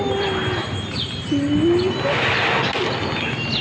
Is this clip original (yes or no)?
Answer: yes